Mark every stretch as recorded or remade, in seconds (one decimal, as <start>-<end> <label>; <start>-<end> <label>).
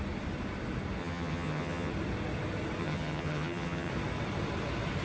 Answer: 0.0-1.0 recorded; 1.0-1.9 remade; 1.9-2.8 recorded; 2.8-3.9 remade; 3.9-5.0 recorded